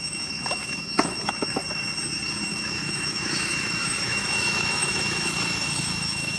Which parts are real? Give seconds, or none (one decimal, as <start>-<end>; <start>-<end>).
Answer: 1.6-2.5